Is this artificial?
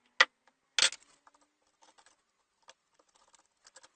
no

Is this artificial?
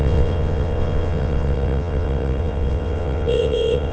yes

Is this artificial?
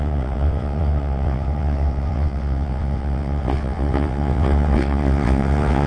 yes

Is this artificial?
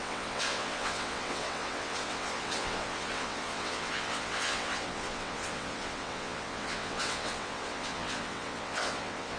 yes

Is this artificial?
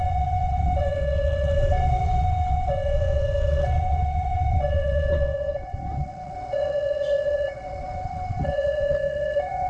yes